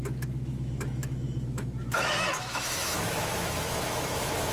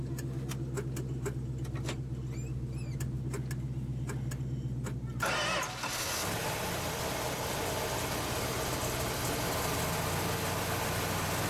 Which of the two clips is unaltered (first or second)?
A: second